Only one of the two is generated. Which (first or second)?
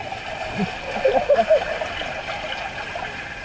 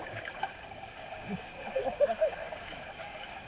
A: second